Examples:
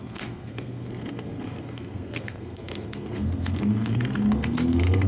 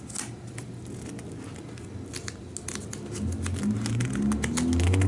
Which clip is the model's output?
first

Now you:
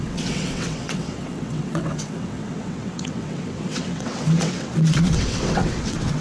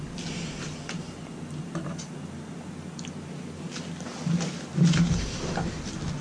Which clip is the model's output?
first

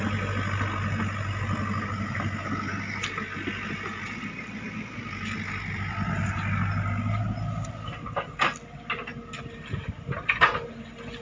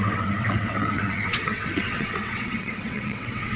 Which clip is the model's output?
second